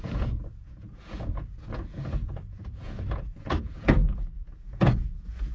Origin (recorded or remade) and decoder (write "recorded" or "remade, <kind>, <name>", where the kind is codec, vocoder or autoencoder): remade, vocoder, Vocos